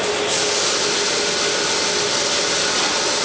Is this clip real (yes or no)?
yes